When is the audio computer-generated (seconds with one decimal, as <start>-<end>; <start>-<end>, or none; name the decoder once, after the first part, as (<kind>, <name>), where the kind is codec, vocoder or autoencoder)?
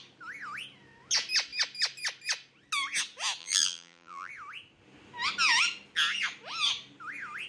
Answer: 3.4-4.3 (vocoder, BigVGAN v2)